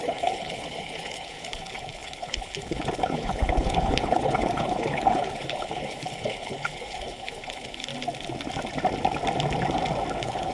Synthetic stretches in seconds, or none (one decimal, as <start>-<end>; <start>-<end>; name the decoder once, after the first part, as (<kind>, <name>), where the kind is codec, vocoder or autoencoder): 0.0-7.9 (codec, HILCodec); 10.1-10.5